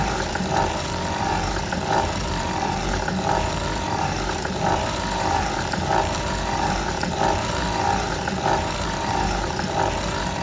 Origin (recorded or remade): remade